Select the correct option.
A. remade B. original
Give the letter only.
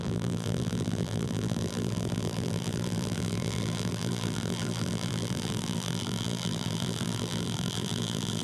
A